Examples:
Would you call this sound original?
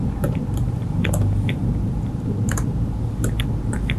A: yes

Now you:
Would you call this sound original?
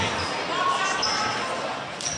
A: yes